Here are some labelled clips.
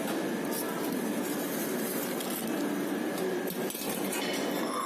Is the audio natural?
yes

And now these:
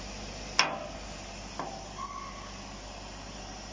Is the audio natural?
yes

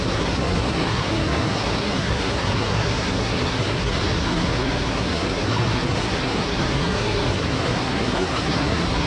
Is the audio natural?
no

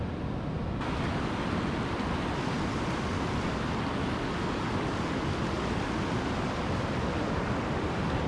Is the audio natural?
yes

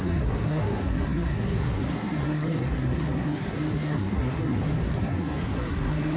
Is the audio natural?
no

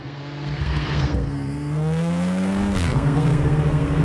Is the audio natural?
no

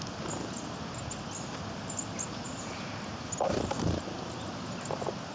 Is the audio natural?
yes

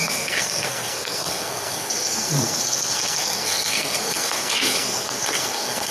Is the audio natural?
no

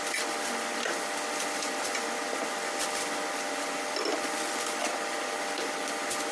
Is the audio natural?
yes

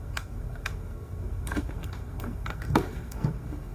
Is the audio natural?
no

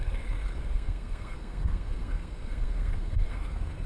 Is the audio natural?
no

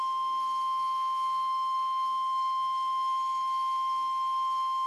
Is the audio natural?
no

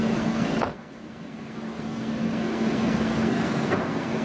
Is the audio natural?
no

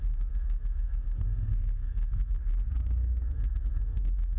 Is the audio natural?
no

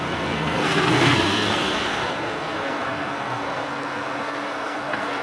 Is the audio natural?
no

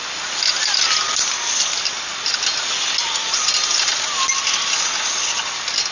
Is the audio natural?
yes